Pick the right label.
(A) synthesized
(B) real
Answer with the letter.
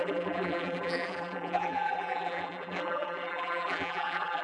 A